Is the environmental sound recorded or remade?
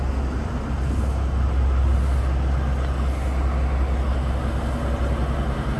recorded